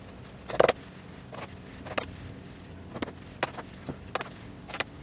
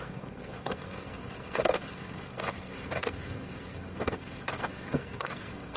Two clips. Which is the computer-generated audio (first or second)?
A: second